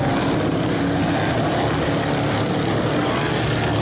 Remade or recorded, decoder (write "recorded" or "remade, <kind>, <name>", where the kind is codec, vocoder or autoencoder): recorded